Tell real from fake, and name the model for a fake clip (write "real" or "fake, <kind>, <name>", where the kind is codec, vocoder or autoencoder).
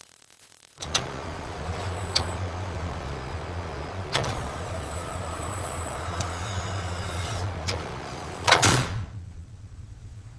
fake, vocoder, Vocos